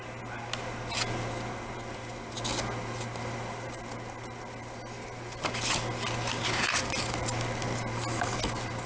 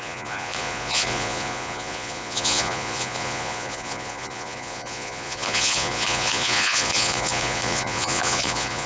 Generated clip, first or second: second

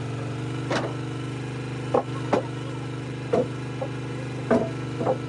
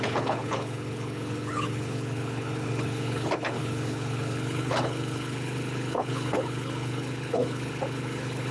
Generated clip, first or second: second